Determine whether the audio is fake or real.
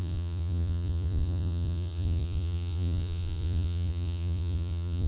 fake